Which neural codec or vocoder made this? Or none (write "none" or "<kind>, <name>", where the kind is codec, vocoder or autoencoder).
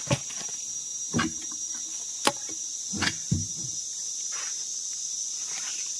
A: none